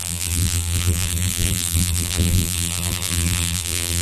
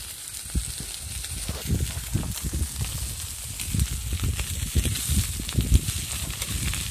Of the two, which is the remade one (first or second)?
first